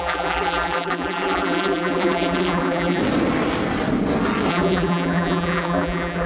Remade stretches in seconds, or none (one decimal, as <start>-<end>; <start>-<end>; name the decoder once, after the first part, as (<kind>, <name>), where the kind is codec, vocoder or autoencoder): 0.0-3.0 (vocoder, BigVGAN v2); 4.5-6.3